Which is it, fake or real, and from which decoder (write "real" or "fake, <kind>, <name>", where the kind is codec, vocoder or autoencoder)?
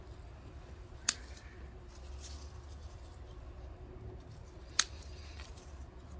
real